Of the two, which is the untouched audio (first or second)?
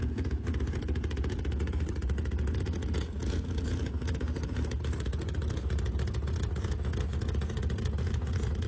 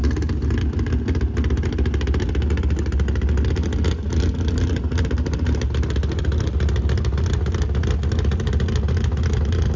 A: second